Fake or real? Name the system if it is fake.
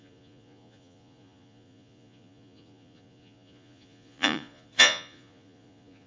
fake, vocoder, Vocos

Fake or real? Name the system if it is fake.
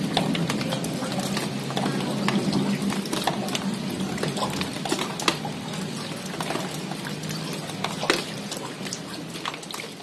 real